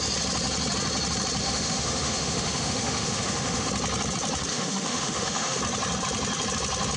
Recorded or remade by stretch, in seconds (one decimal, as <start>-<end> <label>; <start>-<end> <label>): 0.0-1.4 recorded; 1.4-3.7 remade; 3.7-4.5 recorded; 4.5-5.6 remade; 5.6-7.0 recorded